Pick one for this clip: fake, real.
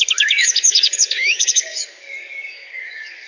fake